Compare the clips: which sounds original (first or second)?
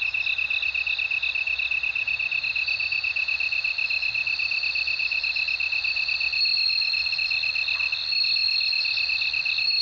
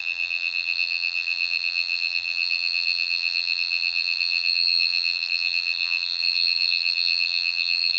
first